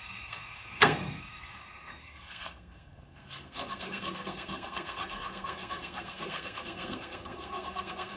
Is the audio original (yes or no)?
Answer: no